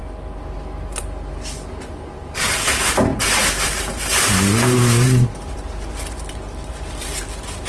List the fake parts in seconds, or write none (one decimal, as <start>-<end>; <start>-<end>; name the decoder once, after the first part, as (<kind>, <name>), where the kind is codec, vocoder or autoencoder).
3.1-7.7 (vocoder, BigVGAN v2)